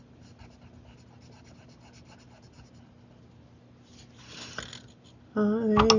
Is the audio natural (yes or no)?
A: yes